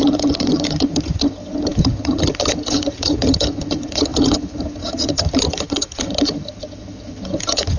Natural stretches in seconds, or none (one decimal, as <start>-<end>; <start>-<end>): none